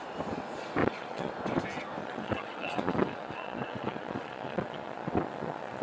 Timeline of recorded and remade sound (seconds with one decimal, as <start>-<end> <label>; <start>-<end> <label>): 0.0-0.8 recorded; 0.8-1.3 remade; 1.3-2.0 recorded; 2.0-5.8 remade